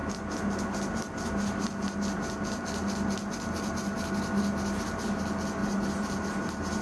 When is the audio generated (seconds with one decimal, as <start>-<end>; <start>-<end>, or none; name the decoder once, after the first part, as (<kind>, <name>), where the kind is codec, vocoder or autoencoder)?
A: 5.6-6.8 (vocoder, BigVGAN v2)